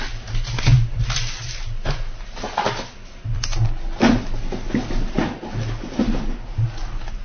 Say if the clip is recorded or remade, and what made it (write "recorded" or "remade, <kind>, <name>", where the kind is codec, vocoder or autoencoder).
recorded